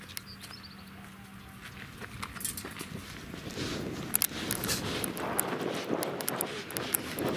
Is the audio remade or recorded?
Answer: recorded